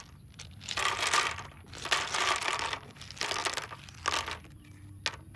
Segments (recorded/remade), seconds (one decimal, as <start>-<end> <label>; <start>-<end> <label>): 0.0-5.4 recorded